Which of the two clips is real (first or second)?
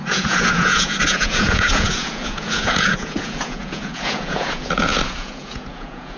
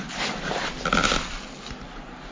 second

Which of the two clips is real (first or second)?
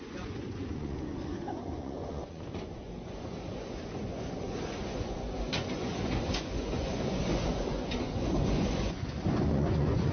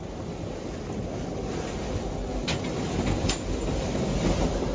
second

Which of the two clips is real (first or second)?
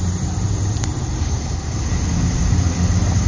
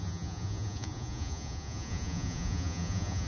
first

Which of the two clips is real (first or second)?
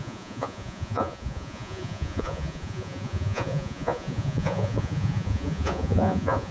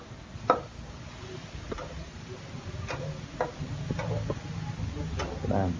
second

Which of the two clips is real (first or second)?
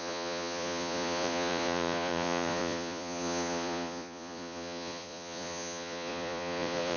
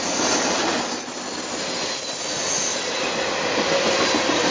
second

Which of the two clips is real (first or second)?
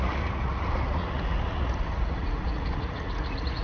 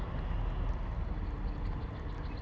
second